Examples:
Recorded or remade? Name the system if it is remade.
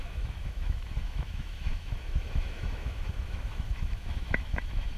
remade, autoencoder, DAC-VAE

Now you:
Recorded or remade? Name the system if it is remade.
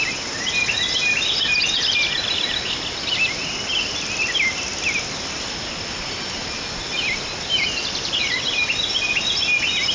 recorded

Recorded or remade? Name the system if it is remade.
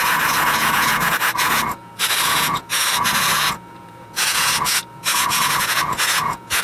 remade, vocoder, Vocos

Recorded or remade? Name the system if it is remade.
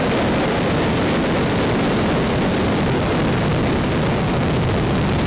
recorded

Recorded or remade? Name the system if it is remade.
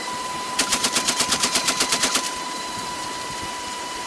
remade, vocoder, BigVGAN v2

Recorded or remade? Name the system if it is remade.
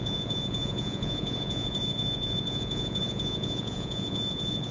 remade, vocoder, Vocos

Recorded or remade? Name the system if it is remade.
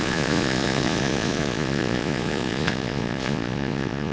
remade, vocoder, Vocos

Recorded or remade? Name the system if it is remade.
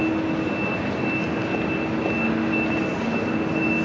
recorded